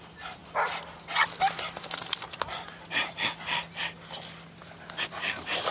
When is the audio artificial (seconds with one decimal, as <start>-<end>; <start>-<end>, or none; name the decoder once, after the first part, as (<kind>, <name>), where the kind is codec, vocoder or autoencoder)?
none